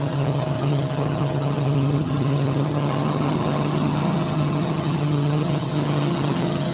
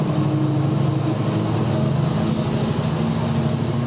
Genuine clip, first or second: second